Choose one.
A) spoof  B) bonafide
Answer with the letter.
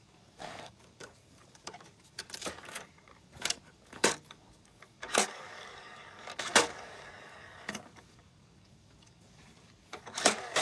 A